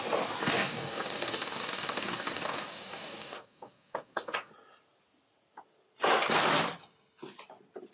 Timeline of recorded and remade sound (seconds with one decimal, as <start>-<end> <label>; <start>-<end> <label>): 0.0-0.4 recorded; 0.4-4.5 remade; 4.5-7.9 recorded